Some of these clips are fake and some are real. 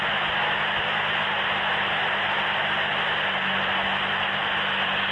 real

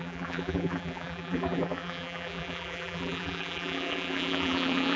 fake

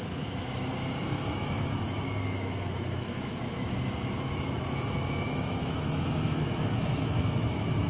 fake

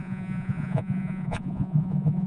fake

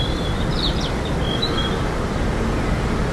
real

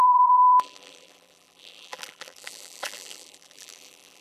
fake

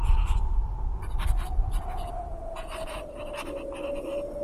real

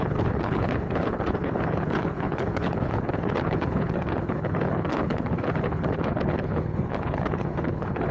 fake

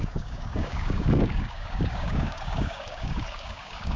fake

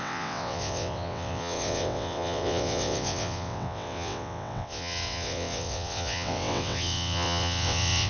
fake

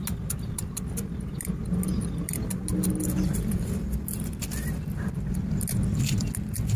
real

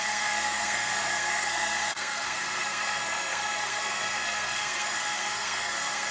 fake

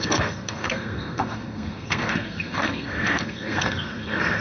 fake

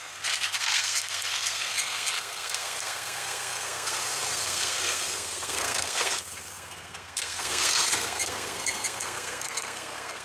fake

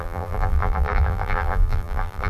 fake